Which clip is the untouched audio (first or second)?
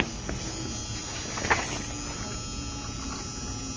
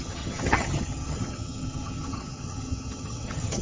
first